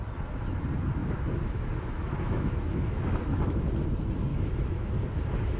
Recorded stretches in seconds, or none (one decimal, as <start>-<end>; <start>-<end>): 0.0-1.0; 3.7-4.3; 4.9-5.6